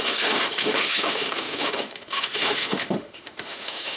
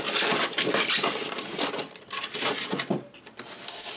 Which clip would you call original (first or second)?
second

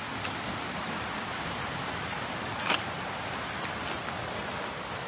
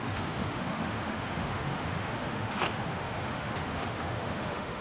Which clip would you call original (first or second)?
first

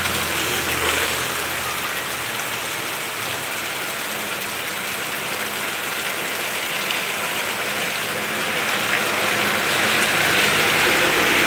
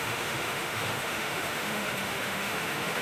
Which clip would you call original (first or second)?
first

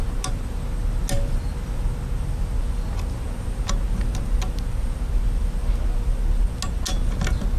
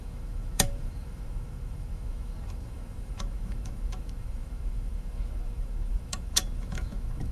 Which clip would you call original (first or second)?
first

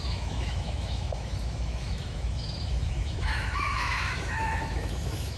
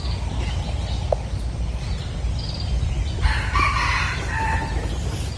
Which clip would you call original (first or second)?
second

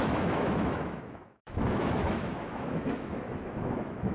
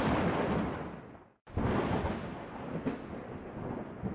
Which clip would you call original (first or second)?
second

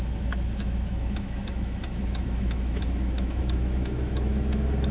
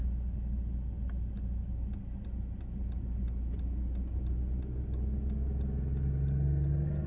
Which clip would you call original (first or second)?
second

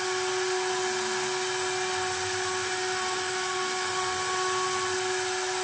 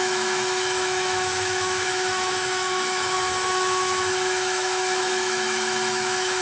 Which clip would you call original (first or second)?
first